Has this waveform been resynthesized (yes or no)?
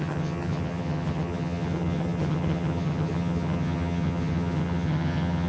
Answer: yes